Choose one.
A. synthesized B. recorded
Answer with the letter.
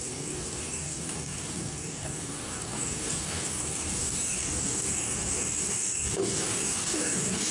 A